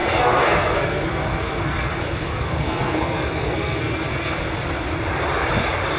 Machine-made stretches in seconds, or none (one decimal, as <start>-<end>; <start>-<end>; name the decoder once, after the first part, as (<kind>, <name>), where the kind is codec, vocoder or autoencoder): 0.0-1.9 (codec, SNAC); 2.3-4.5